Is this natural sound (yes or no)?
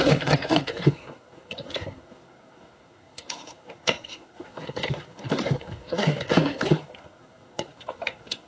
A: no